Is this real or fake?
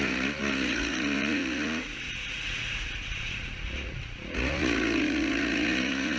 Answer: fake